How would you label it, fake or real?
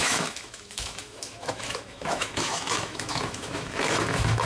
fake